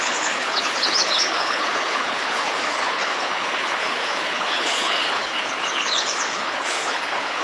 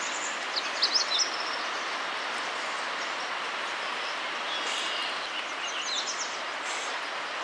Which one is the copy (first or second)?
first